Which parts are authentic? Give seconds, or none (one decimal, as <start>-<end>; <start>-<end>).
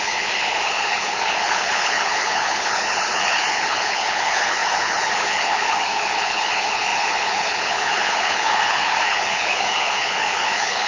none